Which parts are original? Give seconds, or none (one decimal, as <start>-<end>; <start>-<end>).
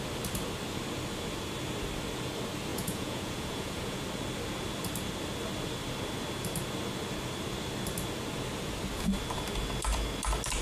0.0-2.7; 4.0-10.6